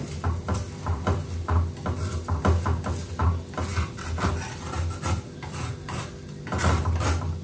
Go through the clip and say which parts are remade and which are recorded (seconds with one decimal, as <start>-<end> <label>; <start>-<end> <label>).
0.0-7.4 recorded